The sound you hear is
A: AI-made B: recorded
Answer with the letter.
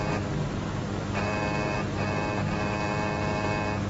B